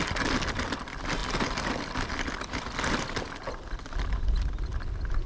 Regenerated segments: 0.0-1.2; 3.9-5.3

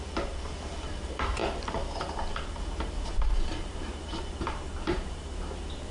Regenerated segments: 0.0-5.9